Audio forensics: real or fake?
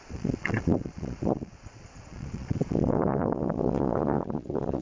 fake